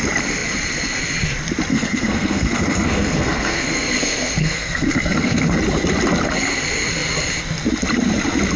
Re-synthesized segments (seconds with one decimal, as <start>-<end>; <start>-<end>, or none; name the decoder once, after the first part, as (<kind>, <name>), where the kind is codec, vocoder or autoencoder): 1.7-5.6 (codec, SNAC)